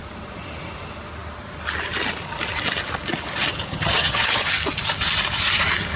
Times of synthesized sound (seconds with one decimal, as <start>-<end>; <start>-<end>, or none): 3.7-4.5